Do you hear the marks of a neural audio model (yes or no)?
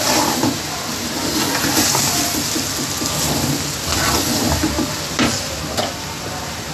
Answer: no